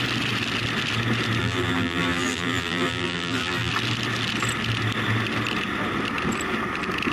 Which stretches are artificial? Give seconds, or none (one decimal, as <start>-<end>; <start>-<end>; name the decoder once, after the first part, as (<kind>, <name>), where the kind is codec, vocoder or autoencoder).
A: 1.4-3.7 (vocoder, BigVGAN v2)